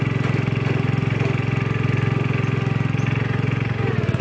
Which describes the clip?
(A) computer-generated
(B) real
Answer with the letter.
B